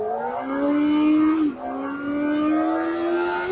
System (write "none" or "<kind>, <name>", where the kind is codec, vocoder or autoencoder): none